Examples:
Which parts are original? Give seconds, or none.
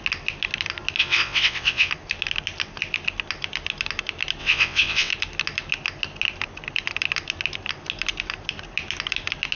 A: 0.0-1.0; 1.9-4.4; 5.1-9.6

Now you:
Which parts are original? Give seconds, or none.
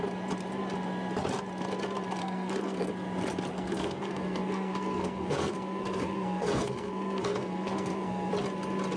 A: 0.0-2.2; 2.9-3.5; 8.3-9.0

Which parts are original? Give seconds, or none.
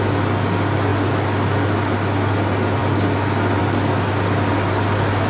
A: 0.0-5.3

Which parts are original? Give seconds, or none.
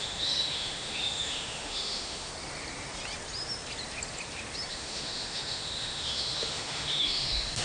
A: 2.3-4.7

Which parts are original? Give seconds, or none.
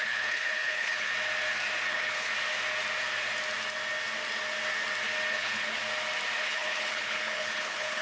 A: 1.1-1.9; 2.3-5.3; 5.8-6.4